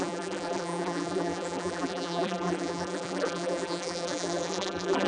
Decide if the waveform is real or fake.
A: fake